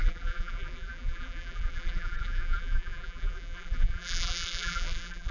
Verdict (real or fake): fake